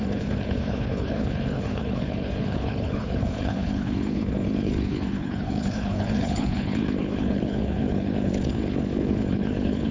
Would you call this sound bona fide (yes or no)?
no